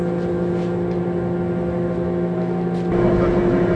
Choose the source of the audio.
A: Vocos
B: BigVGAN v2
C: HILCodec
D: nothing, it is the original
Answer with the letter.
D